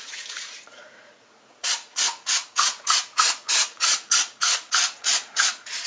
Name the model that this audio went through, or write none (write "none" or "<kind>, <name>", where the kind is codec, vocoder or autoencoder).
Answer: vocoder, Vocos